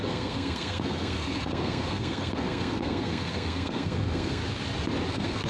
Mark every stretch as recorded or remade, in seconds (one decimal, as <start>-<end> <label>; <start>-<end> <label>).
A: 0.0-4.4 remade; 4.4-5.1 recorded; 5.1-5.5 remade